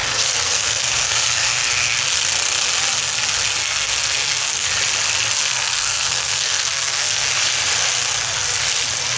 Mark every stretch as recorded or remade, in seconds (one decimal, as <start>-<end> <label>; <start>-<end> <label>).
0.0-2.0 remade; 2.0-3.6 recorded; 3.6-4.7 remade; 4.7-5.4 recorded; 5.4-7.3 remade; 7.3-9.2 recorded